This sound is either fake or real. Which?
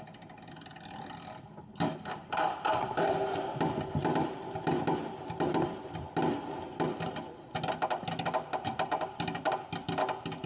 real